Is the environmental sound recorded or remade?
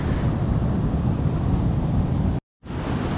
recorded